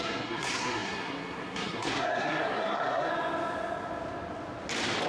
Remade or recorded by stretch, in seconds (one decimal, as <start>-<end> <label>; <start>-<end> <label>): 0.0-3.1 remade; 3.1-5.1 recorded